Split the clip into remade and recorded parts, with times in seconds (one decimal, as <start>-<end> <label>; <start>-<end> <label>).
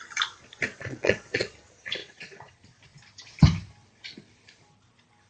0.0-0.7 recorded; 0.7-1.5 remade; 1.5-2.0 recorded; 2.0-2.5 remade; 2.5-5.3 recorded